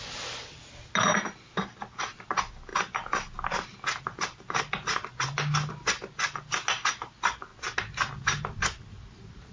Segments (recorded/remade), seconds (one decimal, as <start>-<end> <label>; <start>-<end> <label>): 0.0-9.5 recorded